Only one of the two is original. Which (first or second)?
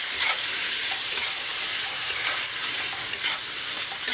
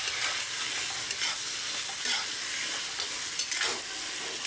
second